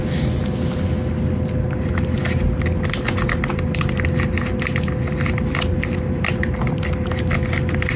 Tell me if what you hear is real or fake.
real